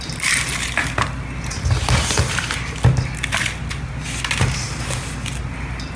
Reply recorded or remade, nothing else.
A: recorded